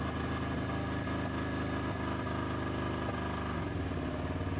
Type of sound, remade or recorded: recorded